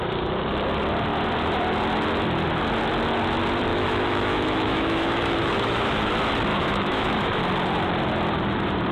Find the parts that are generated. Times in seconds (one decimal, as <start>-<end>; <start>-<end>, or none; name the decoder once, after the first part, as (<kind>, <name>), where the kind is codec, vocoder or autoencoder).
3.7-6.1 (autoencoder, DAC-VAE); 6.5-7.4